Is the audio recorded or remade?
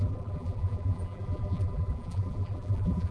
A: remade